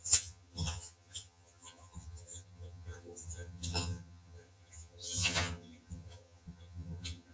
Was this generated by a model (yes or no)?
yes